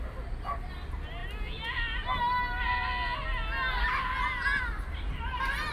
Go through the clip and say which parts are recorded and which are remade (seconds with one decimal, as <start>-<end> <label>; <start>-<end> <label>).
0.0-5.7 recorded